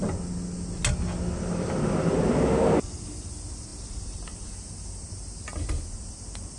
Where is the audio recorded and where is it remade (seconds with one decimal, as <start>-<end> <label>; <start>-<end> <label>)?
0.0-6.6 recorded